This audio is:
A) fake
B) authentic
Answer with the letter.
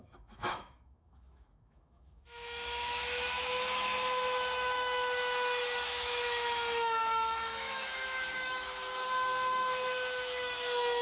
A